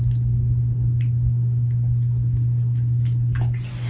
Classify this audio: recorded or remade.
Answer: recorded